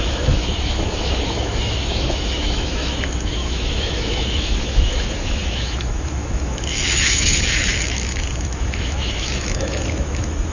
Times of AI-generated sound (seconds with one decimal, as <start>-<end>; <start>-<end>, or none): 0.0-10.5